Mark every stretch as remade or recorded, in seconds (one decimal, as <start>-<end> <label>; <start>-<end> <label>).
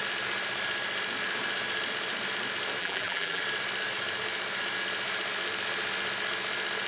0.0-2.8 recorded; 2.8-3.4 remade; 3.4-6.9 recorded